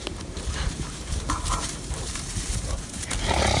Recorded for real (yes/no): no